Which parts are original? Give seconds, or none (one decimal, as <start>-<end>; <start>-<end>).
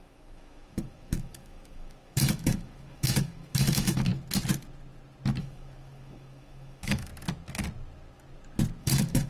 4.1-5.4; 7.1-8.8